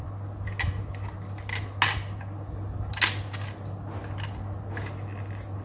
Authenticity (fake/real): real